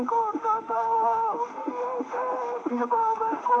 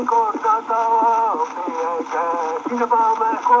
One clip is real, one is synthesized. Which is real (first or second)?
second